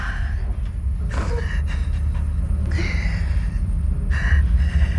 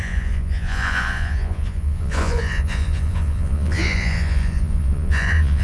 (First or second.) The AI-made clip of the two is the second